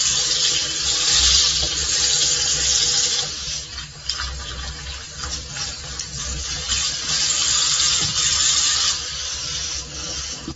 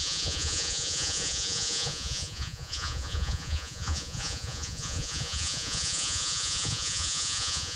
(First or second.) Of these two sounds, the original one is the first